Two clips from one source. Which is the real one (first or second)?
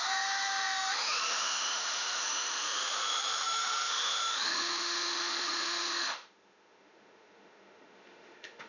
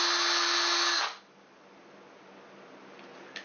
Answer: second